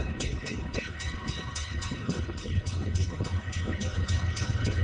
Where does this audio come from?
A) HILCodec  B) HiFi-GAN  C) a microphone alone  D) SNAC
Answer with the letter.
A